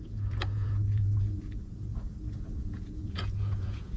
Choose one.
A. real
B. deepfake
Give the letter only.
B